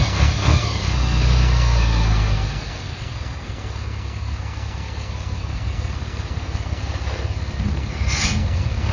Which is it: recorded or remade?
remade